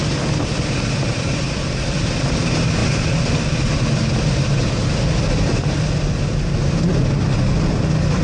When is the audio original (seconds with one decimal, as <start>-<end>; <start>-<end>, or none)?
0.0-8.2